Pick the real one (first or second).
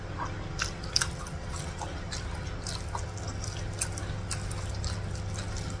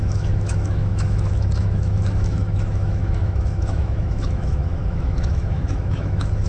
first